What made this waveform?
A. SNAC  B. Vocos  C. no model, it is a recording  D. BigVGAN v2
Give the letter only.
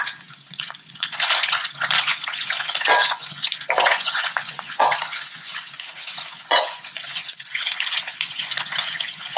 B